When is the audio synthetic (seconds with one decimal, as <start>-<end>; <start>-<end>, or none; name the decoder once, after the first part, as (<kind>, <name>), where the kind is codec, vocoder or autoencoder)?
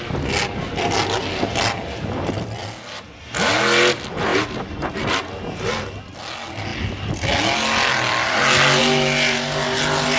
none